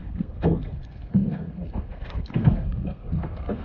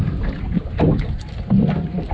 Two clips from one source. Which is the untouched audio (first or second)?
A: second